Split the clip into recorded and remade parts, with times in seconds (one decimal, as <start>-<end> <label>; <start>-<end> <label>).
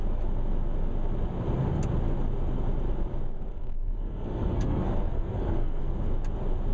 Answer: 0.0-3.5 recorded; 3.5-5.8 remade; 5.8-6.7 recorded